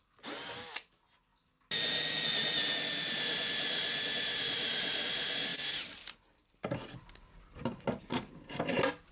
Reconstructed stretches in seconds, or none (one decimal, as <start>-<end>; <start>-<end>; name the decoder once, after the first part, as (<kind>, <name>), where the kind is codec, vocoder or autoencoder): none